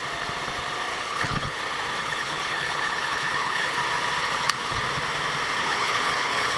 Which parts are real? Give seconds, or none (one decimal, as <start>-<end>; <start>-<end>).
0.0-0.9; 1.6-2.0; 3.8-4.2; 4.8-5.6